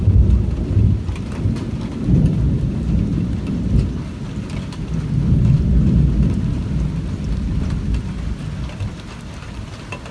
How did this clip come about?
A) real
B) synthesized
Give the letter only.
A